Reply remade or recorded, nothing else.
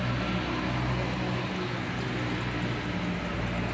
recorded